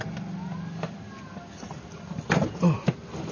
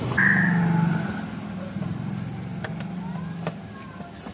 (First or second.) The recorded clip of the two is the first